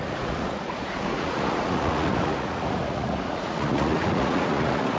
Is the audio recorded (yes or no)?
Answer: no